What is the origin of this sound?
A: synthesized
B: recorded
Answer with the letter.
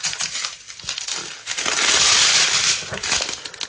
B